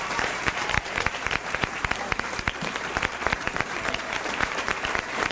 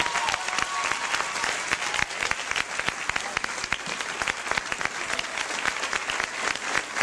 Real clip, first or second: second